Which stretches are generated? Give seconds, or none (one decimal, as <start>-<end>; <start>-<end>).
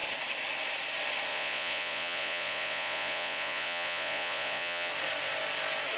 1.3-4.9